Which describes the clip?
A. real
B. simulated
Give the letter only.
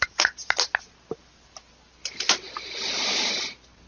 A